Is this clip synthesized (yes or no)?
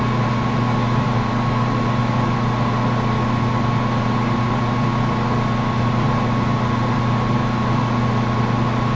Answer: no